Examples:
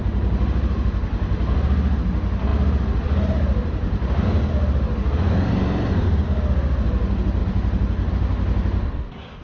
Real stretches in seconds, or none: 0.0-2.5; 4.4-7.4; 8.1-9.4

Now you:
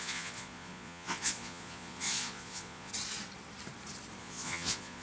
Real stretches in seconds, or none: 2.9-4.2